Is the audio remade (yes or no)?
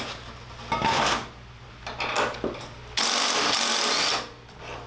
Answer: no